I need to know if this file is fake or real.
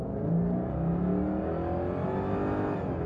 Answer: real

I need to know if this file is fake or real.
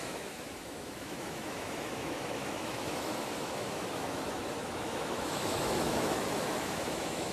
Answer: fake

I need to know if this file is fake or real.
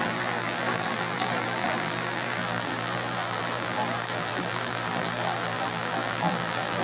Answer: fake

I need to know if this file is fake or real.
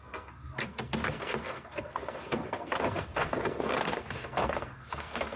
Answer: fake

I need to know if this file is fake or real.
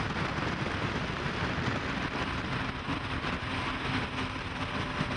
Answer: real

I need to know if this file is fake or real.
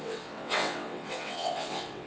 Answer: fake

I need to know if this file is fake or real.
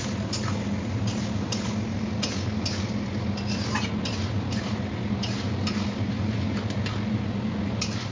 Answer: real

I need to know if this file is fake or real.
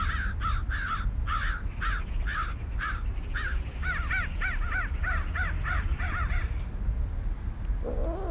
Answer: real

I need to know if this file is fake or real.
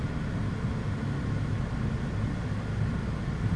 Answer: real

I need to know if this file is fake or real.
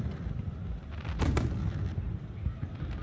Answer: real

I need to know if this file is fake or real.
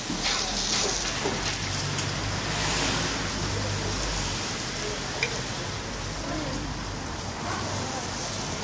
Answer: real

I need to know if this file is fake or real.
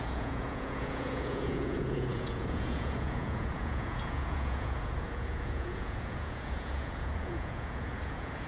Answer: fake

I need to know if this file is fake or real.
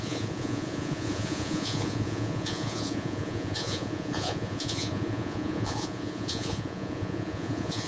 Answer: fake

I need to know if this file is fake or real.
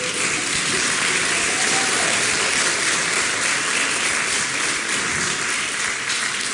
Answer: fake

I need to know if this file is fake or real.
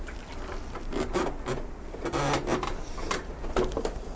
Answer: real